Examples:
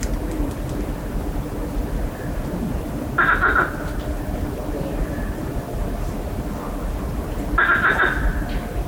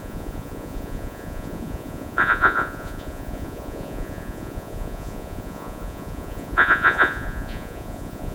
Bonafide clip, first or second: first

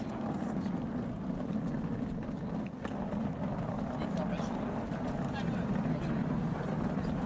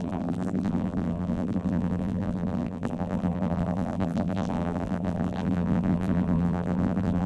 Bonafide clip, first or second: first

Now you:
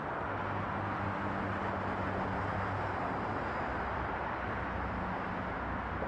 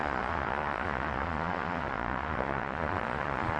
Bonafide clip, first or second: first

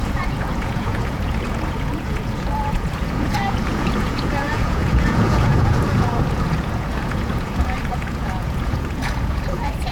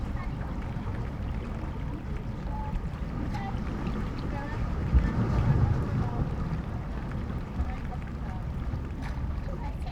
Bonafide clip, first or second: second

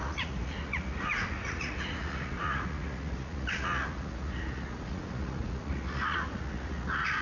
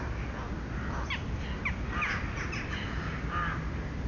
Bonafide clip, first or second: second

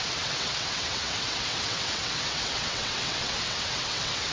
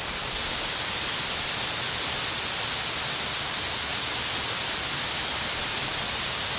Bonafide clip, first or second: second